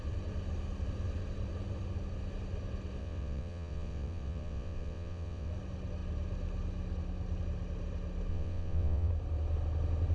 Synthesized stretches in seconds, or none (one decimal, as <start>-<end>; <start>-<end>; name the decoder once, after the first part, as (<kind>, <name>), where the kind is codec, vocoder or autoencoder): 3.0-5.5 (vocoder, WaveNeXt); 8.3-9.1